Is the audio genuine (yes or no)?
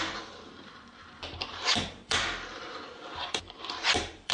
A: no